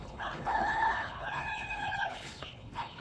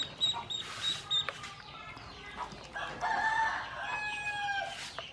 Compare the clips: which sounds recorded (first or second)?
second